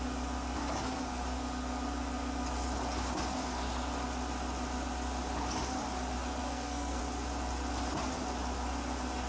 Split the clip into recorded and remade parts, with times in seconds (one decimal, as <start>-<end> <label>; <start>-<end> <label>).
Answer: 0.0-6.4 recorded; 6.4-7.0 remade; 7.0-9.3 recorded